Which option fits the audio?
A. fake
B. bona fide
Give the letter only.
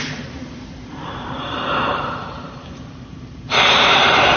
A